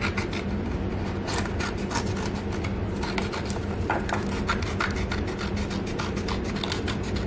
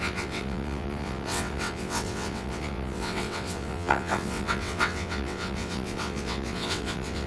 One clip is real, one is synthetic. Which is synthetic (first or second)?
second